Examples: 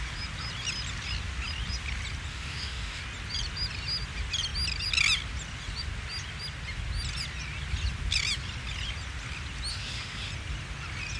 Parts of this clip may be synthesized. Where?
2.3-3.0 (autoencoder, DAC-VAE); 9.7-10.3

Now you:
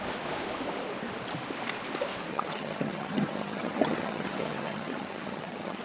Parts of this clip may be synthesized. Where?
2.3-5.8 (vocoder, HiFi-GAN)

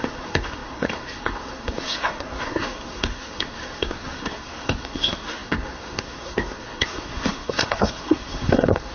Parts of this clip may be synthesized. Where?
0.0-8.9 (codec, SNAC)

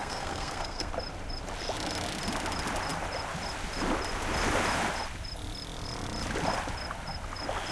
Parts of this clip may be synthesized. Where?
0.0-0.9 (codec, SNAC)

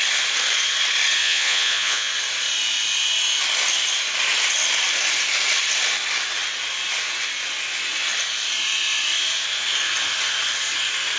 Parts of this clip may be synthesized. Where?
1.2-2.1 (vocoder, Vocos)

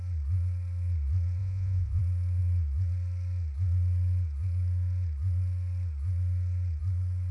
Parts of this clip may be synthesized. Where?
1.4-2.0 (vocoder, Vocos)

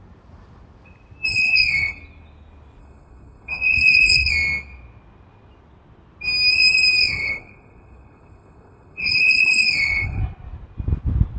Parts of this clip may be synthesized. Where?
1.3-2.0 (codec, HILCodec); 2.8-4.3; 7.0-10.2

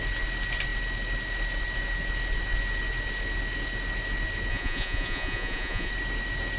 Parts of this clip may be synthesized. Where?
4.5-5.9 (vocoder, Vocos)